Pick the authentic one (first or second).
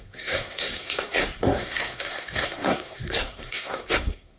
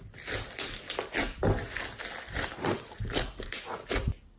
second